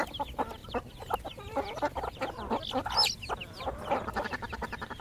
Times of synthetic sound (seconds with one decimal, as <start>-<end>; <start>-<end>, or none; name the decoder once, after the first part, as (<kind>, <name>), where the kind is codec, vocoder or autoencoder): none